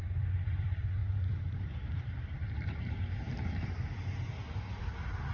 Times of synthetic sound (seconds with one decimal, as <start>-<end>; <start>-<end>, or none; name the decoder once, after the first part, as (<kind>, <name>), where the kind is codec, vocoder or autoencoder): 1.0-2.9 (vocoder, BigVGAN v2)

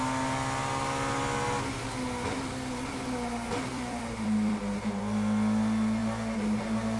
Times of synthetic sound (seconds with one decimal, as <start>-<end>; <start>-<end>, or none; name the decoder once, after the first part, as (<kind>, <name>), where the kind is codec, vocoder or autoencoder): 3.7-5.0 (vocoder, BigVGAN v2)

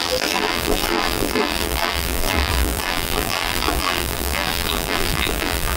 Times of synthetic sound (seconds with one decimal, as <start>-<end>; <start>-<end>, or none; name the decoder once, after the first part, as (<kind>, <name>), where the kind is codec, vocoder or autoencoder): 0.0-5.8 (vocoder, BigVGAN v2)

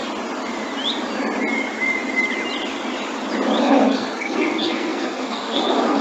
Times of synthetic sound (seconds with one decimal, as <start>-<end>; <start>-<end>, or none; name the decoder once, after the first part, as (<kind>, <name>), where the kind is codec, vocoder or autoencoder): 3.6-6.0 (codec, SNAC)

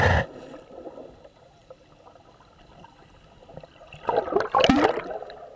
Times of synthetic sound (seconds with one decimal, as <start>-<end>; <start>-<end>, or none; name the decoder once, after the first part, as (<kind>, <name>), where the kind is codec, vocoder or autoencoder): 1.6-5.0 (vocoder, BigVGAN v2)